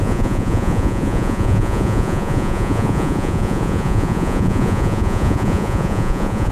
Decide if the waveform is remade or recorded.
remade